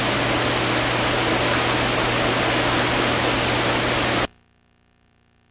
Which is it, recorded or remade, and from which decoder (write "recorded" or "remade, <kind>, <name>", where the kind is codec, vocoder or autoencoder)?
recorded